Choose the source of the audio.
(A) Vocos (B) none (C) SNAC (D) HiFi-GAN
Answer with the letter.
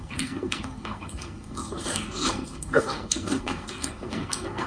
C